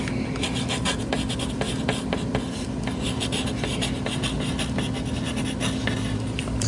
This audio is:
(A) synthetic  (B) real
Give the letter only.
B